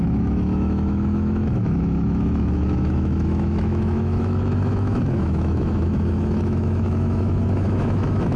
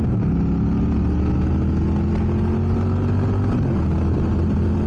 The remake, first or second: first